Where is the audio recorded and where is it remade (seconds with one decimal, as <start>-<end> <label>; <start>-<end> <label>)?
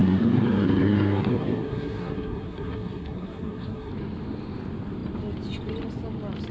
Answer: 0.0-3.9 remade; 3.9-6.5 recorded